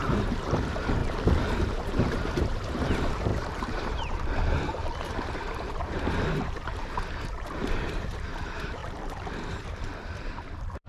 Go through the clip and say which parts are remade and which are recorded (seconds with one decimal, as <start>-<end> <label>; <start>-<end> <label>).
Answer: 0.0-1.0 remade; 1.0-1.6 recorded; 1.6-8.8 remade; 8.8-9.5 recorded; 9.5-10.9 remade